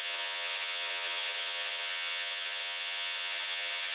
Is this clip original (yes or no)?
no